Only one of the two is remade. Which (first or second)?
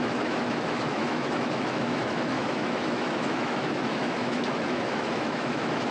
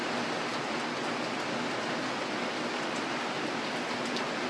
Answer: first